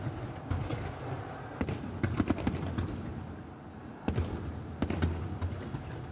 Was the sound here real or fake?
real